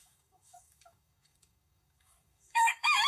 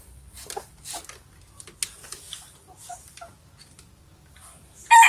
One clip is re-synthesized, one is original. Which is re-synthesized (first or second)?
first